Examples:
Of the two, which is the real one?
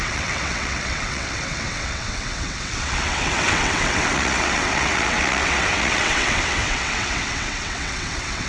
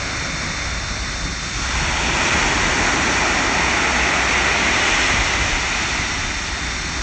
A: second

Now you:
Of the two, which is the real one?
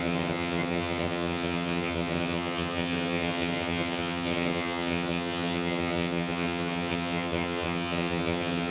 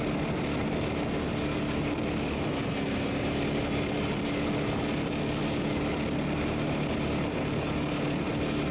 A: second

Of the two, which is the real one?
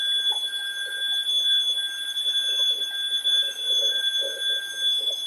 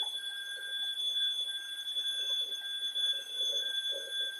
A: first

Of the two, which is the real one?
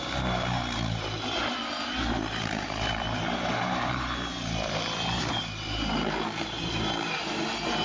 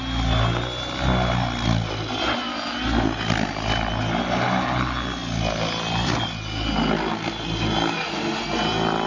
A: second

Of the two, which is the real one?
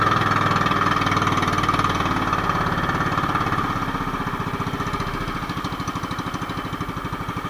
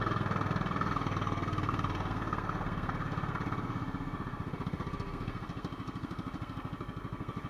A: first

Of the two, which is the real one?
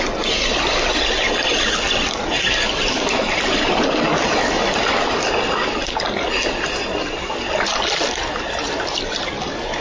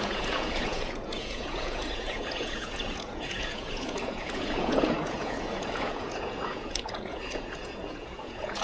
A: first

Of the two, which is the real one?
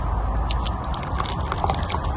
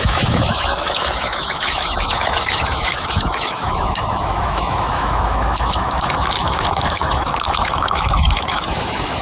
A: first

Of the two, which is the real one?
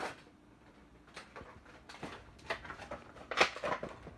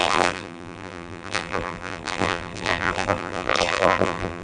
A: first